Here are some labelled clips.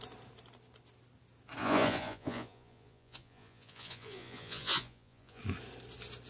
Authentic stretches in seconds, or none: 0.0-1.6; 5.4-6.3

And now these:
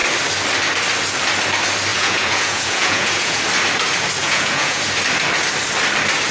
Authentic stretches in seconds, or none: 0.0-1.9; 3.4-4.2; 4.8-6.3

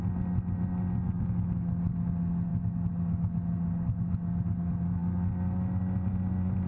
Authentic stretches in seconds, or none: 0.0-6.7

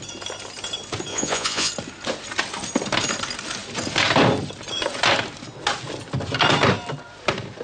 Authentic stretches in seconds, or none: 0.0-1.1; 1.7-7.6

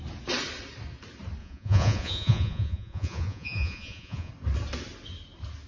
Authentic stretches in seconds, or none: 0.0-1.4; 4.3-5.7